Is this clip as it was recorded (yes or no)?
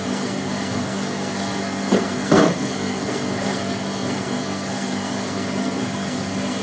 no